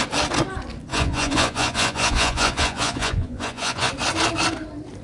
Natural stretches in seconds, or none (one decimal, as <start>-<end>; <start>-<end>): 0.0-0.9; 3.9-5.0